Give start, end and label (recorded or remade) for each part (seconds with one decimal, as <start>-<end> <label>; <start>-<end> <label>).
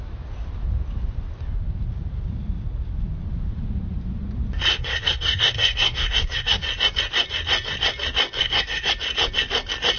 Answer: 0.0-4.7 recorded; 4.7-6.6 remade; 6.6-8.4 recorded; 8.4-8.9 remade; 8.9-10.0 recorded